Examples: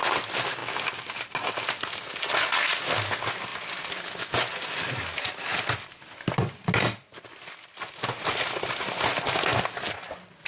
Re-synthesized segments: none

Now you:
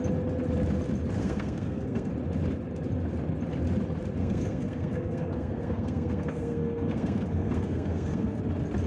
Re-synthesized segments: 1.2-2.1 (codec, SNAC); 4.2-8.4

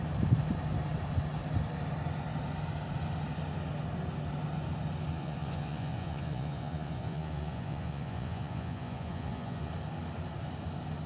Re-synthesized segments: 5.1-9.7 (vocoder, Vocos)

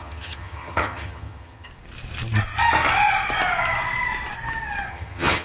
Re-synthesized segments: 0.0-1.7 (vocoder, HiFi-GAN); 4.9-5.4

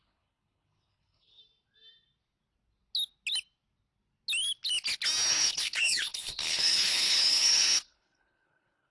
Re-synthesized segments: 0.0-1.4 (codec, HILCodec); 5.3-8.9